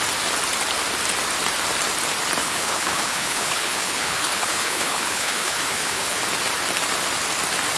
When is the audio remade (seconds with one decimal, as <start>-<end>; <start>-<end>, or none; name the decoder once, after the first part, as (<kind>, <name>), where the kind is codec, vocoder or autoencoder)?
2.4-6.2 (codec, HILCodec)

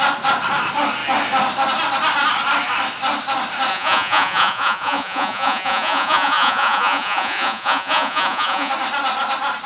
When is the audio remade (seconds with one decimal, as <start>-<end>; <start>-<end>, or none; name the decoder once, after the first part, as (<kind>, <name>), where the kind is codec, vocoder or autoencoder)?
3.7-8.7 (vocoder, Vocos)

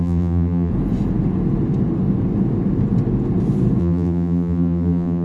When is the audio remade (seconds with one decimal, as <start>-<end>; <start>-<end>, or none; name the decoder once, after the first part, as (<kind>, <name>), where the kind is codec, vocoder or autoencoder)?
0.0-0.7 (vocoder, BigVGAN v2); 3.8-5.2

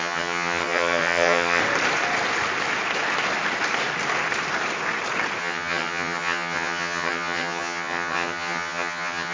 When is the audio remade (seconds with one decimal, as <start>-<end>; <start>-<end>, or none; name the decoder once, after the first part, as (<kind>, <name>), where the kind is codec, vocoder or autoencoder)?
0.0-1.6 (vocoder, HiFi-GAN); 5.4-9.3

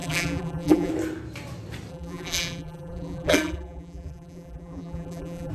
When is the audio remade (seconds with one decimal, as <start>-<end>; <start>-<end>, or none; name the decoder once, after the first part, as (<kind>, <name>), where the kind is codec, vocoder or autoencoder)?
0.0-0.9 (vocoder, BigVGAN v2); 1.9-5.5

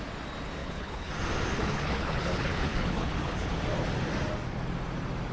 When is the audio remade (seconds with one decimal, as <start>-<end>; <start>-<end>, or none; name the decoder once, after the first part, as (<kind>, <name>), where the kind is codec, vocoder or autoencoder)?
0.6-1.1 (codec, HILCodec); 1.6-3.5